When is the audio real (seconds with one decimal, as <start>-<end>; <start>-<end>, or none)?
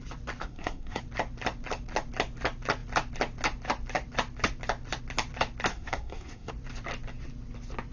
0.0-0.4; 1.0-5.7; 6.5-7.9